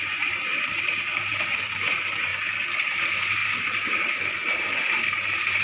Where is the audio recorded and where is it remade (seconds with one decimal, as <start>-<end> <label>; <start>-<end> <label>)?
0.0-2.3 remade; 2.3-3.0 recorded; 3.0-5.6 remade